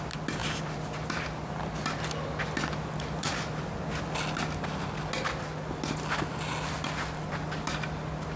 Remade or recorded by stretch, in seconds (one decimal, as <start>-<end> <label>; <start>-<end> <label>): 0.0-0.4 recorded; 0.4-1.5 remade; 1.5-8.4 recorded